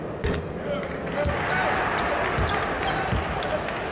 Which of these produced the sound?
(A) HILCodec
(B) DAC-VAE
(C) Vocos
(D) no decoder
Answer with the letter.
D